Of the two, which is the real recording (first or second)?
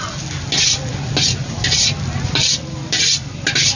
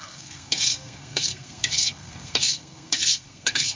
first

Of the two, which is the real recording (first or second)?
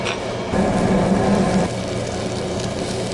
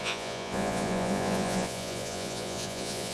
first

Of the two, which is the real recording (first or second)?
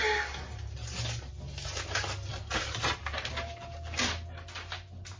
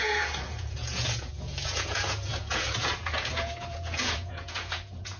first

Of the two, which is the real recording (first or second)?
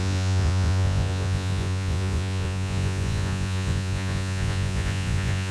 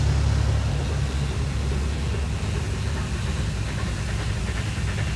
second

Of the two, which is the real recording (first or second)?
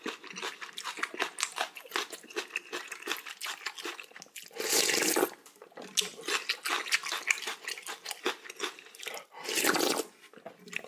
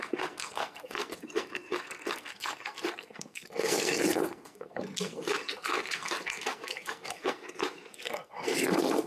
first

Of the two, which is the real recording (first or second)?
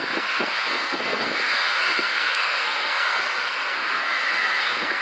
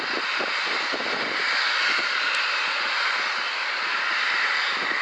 second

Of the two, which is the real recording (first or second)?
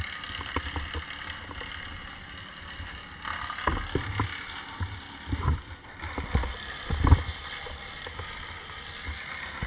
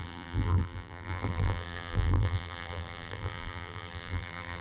first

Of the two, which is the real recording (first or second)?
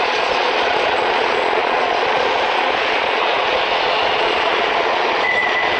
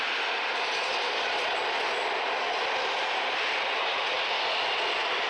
second